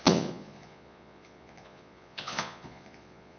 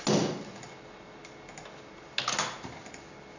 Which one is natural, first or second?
second